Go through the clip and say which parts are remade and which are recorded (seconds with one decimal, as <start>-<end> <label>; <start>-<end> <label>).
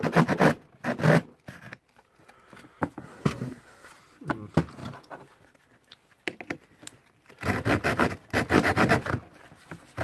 0.0-3.0 recorded; 3.0-3.9 remade; 3.9-10.0 recorded